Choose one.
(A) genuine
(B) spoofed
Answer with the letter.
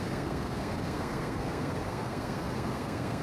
B